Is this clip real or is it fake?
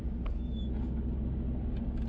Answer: real